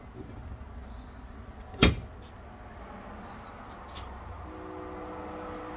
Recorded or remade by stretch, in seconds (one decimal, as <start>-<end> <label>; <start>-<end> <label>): 0.0-5.8 recorded